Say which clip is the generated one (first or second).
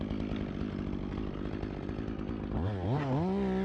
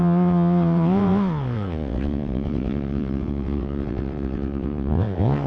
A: second